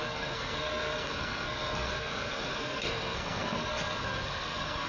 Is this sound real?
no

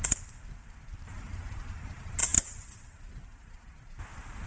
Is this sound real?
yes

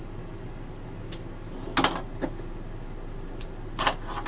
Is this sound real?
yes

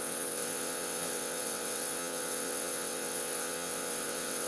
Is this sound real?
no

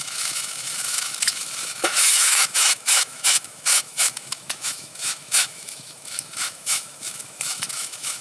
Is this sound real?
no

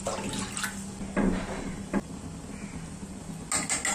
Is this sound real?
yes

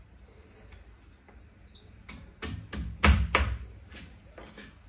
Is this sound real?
yes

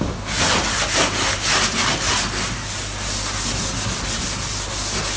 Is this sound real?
yes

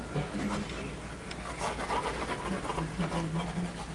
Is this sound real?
yes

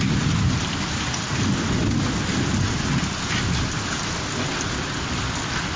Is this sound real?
yes